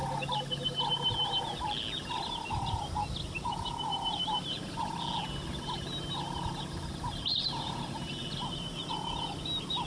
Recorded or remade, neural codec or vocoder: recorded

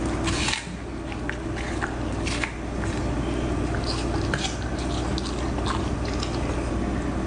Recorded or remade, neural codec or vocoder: recorded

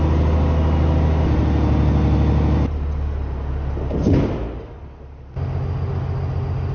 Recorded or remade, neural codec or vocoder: recorded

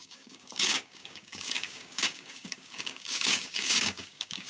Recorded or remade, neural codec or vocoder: remade, codec, DAC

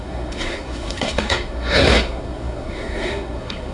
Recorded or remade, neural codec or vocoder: remade, codec, SNAC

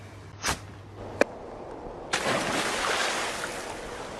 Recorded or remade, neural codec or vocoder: recorded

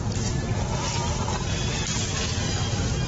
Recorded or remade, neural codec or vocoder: recorded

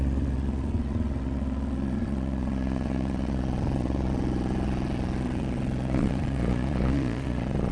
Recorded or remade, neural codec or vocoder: remade, vocoder, Vocos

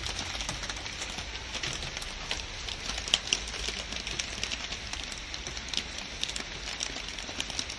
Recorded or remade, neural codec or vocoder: recorded